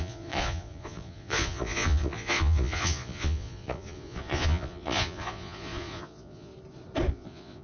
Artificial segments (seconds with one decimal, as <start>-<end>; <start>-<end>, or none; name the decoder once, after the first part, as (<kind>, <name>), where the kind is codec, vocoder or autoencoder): 0.0-6.5 (vocoder, Vocos); 7.1-7.6